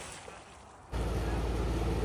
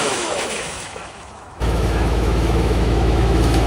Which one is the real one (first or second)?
first